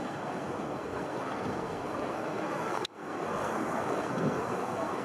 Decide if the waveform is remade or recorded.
remade